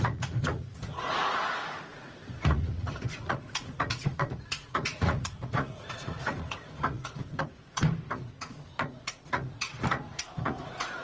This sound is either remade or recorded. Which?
remade